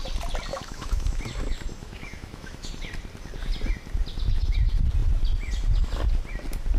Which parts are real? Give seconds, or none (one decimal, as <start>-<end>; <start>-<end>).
0.0-0.5; 1.2-1.8; 2.7-6.8